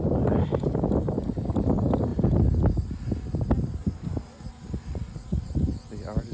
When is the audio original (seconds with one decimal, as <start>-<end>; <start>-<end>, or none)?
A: 0.0-4.9; 5.5-6.3